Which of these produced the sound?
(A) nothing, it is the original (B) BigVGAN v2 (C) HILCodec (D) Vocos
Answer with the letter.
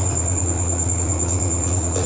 D